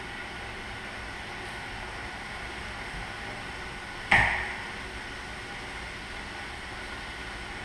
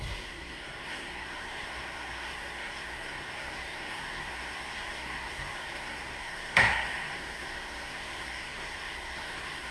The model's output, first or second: second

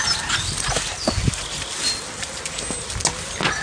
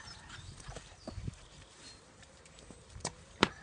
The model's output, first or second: second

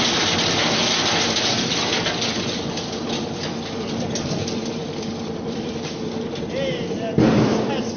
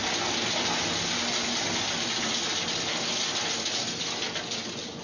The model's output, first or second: first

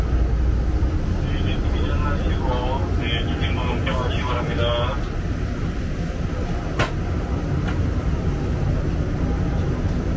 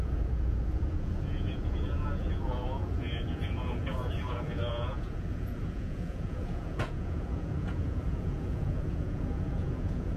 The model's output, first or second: second